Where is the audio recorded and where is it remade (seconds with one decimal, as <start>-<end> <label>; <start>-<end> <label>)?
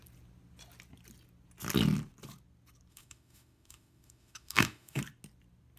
0.0-2.9 recorded; 2.9-5.0 remade; 5.0-5.8 recorded